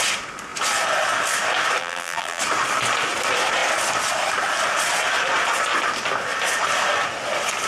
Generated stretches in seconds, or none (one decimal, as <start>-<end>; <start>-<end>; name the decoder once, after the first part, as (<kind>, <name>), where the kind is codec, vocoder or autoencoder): 1.8-2.4 (vocoder, BigVGAN v2)